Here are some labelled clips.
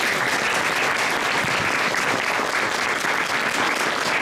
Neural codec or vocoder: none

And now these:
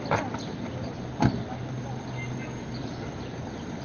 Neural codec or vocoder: none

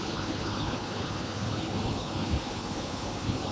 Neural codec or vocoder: codec, HILCodec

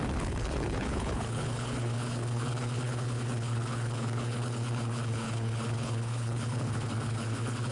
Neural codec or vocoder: codec, HILCodec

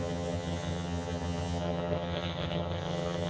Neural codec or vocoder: vocoder, HiFi-GAN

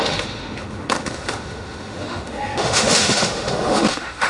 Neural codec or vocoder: autoencoder, DAC-VAE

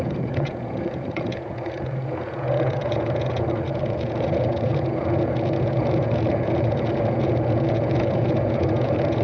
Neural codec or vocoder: vocoder, Vocos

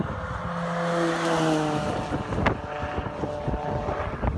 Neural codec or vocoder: none